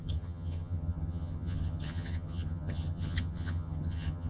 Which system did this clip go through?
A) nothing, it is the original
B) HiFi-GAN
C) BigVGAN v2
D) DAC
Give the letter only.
B